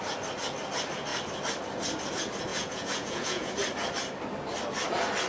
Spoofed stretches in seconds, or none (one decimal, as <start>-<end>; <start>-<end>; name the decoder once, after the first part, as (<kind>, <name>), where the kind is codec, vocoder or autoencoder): 2.5-3.5 (vocoder, Vocos)